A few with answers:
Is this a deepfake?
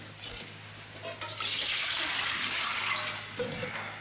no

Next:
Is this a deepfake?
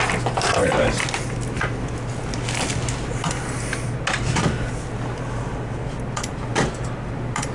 no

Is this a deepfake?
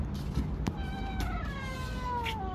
no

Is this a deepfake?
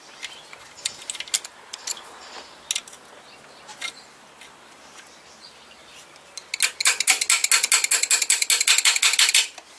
no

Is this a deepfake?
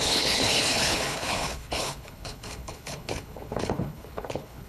yes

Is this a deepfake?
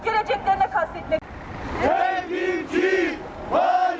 no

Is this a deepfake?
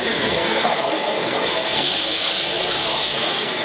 yes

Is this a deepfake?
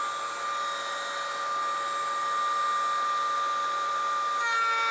no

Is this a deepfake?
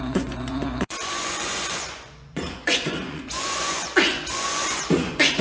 yes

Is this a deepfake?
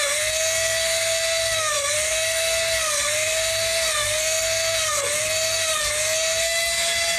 yes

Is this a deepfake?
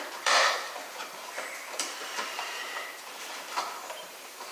yes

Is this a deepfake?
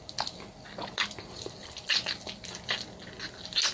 no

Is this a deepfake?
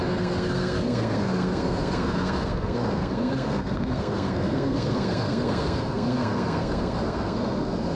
yes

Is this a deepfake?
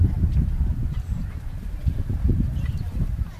yes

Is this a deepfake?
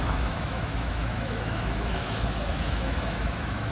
yes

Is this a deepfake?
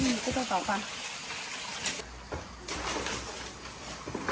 no